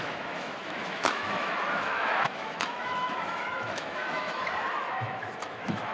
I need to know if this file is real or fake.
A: fake